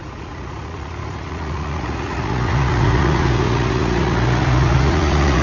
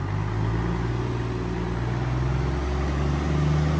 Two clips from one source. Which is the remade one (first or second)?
first